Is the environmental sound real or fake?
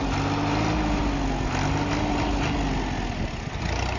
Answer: real